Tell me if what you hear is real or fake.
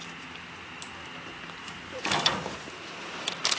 real